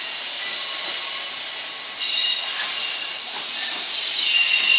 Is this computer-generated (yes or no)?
no